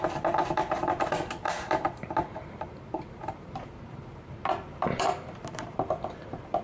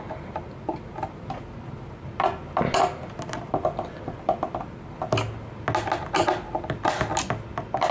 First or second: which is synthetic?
first